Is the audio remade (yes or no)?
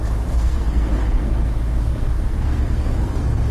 yes